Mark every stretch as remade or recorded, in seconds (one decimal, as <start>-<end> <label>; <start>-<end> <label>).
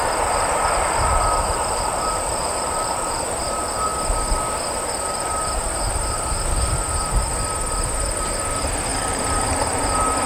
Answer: 0.0-3.9 remade; 3.9-5.1 recorded; 5.1-10.3 remade